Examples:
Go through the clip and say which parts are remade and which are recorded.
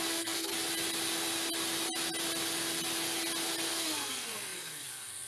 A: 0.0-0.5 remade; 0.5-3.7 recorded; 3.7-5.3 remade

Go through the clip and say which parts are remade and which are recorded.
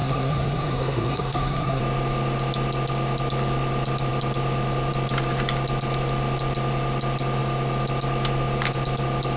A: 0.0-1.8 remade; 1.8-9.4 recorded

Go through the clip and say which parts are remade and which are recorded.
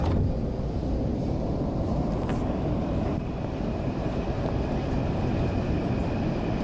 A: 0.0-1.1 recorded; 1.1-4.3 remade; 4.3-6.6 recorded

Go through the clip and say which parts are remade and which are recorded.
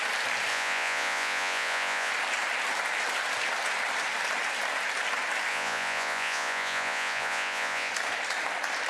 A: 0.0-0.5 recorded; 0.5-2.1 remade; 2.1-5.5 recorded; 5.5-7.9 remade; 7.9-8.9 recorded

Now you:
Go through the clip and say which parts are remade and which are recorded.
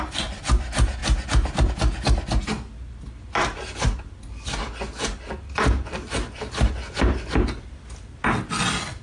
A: 0.0-9.0 recorded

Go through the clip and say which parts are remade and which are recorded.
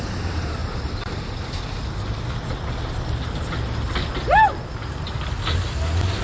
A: 0.0-6.2 recorded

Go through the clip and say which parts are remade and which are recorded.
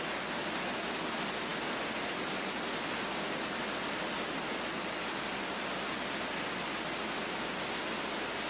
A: 0.0-8.5 recorded